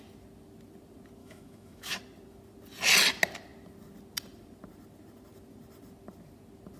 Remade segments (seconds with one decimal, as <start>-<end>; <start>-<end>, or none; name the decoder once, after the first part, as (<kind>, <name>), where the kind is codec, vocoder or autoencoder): 1.2-2.0 (autoencoder, DAC-VAE)

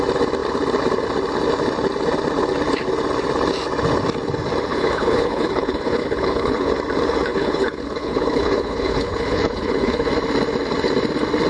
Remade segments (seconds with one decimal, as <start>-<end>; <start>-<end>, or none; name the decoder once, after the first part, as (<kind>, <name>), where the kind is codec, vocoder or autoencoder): 4.7-6.7 (codec, HILCodec); 7.3-10.1